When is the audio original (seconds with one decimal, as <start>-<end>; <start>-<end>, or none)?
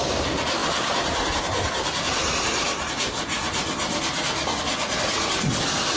0.0-6.0